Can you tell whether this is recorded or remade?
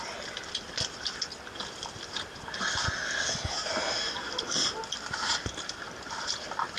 recorded